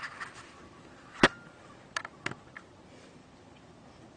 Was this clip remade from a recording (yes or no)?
no